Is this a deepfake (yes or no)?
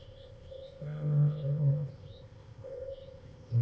yes